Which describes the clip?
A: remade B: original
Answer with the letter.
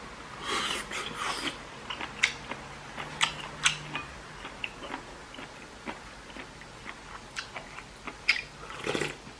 B